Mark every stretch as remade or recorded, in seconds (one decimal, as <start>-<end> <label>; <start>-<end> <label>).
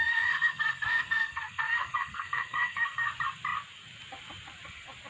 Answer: 0.0-3.1 remade; 3.1-5.1 recorded